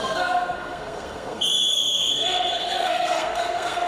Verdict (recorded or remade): remade